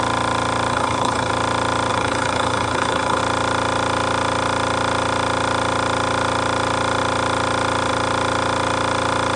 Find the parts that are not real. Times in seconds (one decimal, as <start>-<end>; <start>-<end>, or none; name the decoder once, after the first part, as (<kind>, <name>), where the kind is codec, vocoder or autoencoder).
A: 0.7-1.3 (codec, HILCodec); 1.9-3.2